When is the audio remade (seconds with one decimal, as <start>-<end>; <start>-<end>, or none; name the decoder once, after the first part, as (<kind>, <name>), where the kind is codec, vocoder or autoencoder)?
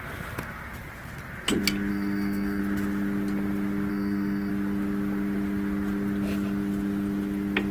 1.9-2.6 (codec, SNAC); 3.9-4.5